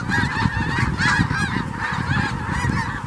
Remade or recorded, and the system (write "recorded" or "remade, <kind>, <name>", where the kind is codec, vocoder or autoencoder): recorded